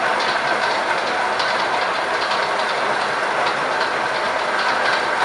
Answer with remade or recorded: remade